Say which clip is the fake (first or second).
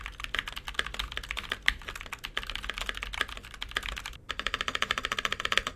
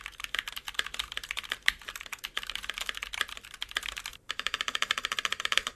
second